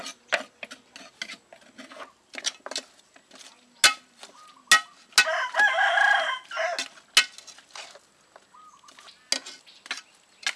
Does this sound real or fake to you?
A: real